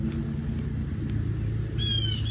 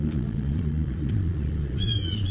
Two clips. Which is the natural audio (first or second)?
first